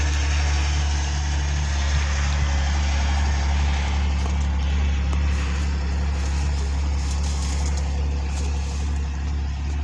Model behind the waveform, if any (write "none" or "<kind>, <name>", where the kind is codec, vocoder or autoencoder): none